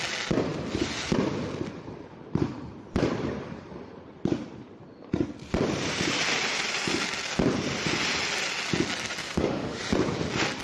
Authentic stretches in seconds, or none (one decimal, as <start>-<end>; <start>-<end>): 0.0-9.2; 9.8-10.6